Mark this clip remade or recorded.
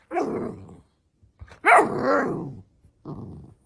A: recorded